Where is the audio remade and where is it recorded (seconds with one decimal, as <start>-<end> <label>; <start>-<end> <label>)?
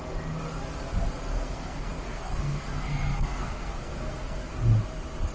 0.0-1.3 recorded; 1.3-4.5 remade; 4.5-5.3 recorded